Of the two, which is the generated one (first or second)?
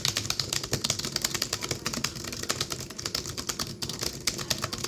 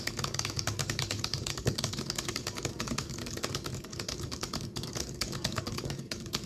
second